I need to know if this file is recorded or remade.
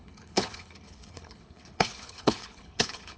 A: remade